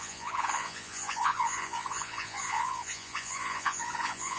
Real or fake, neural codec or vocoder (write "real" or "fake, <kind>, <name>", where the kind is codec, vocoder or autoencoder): fake, vocoder, Vocos